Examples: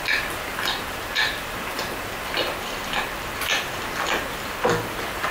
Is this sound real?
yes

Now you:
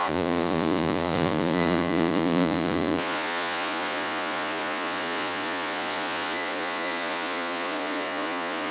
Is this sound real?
no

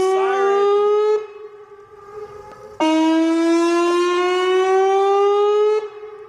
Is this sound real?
yes